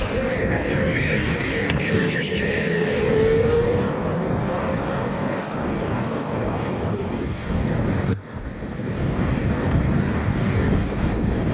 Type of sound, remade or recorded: remade